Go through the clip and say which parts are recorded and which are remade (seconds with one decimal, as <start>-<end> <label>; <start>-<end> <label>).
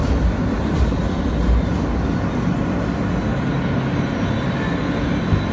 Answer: 0.0-5.5 recorded